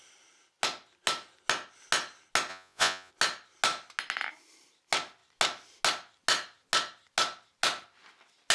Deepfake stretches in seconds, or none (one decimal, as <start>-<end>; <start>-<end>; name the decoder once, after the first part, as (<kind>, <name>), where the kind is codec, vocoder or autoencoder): 2.5-3.1 (vocoder, Vocos)